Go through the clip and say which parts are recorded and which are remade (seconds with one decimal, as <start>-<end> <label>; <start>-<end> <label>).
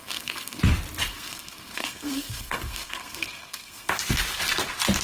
0.0-0.6 remade; 0.6-1.1 recorded; 1.1-3.9 remade; 3.9-5.0 recorded